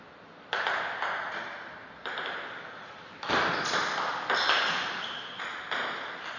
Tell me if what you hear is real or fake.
real